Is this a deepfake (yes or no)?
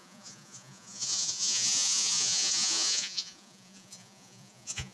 yes